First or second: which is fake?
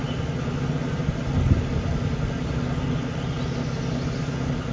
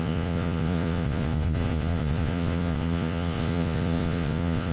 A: second